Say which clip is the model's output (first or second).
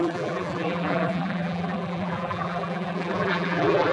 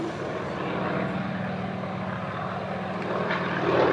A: first